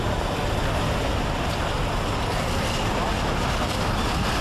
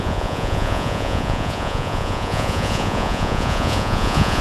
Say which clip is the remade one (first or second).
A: second